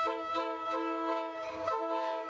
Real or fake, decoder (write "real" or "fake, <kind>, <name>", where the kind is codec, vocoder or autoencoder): fake, codec, DAC